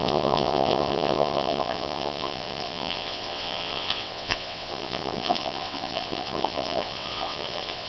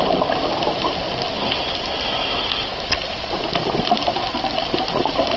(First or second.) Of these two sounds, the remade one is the first